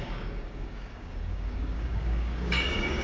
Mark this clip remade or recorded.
remade